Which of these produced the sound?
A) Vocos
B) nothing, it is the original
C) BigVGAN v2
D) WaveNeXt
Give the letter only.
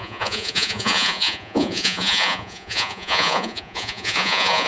A